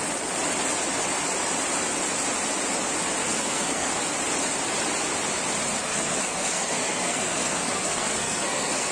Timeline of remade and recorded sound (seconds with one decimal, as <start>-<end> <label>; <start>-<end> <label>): 0.0-3.2 recorded; 3.2-4.0 remade; 4.0-5.9 recorded; 5.9-8.9 remade